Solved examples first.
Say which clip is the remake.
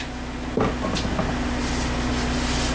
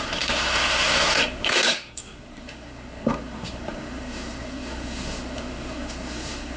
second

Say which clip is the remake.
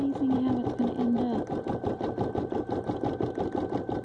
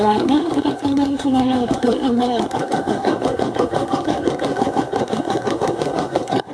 second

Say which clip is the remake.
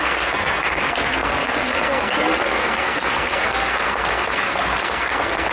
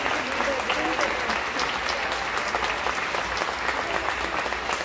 first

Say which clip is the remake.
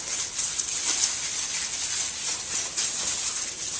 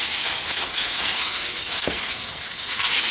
second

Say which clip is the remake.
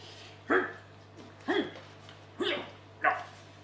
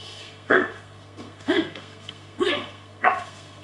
second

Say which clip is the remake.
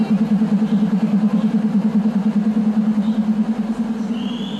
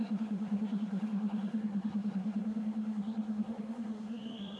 second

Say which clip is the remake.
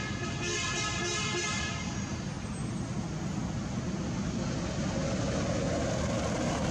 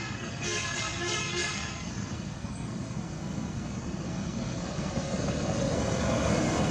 second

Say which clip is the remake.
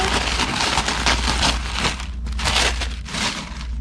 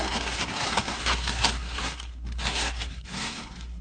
second